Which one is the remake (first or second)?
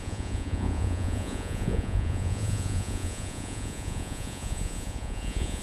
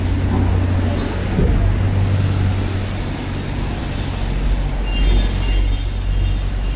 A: first